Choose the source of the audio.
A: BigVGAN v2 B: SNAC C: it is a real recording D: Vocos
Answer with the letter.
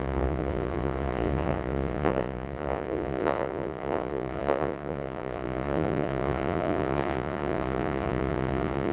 D